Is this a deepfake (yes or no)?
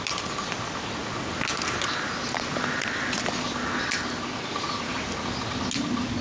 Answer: no